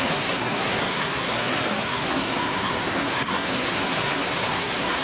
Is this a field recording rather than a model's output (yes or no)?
no